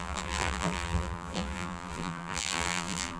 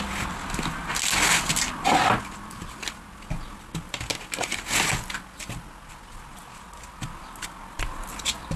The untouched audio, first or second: second